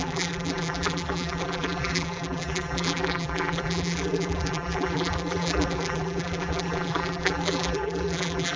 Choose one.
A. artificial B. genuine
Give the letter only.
A